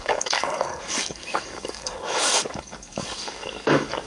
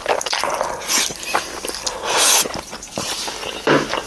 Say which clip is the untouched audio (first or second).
second